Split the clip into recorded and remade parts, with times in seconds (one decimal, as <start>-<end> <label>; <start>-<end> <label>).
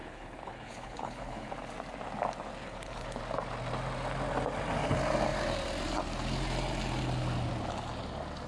0.0-1.5 remade; 1.5-2.6 recorded; 2.6-3.2 remade; 3.2-8.5 recorded